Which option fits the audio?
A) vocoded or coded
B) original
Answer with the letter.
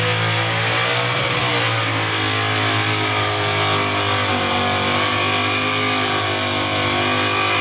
B